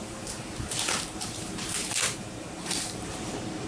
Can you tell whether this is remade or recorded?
remade